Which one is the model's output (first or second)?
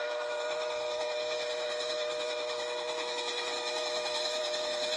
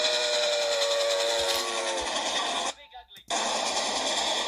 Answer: first